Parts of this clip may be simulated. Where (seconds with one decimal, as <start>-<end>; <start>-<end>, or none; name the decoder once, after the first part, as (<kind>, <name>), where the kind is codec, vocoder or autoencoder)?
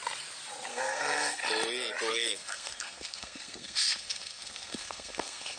0.7-1.4 (codec, SNAC); 2.1-5.6